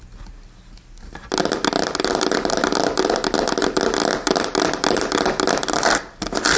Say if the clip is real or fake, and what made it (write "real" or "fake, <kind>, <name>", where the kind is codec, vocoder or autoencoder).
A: real